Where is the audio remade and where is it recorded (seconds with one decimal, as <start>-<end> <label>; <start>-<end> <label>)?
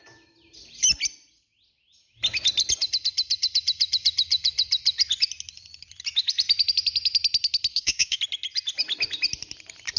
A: 0.0-7.7 recorded; 7.7-8.2 remade; 8.2-10.0 recorded